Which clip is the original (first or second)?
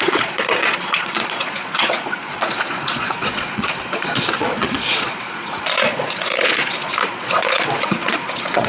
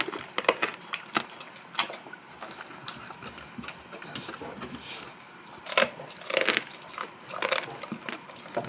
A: second